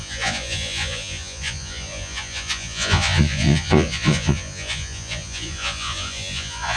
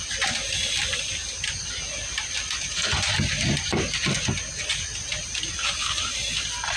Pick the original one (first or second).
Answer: second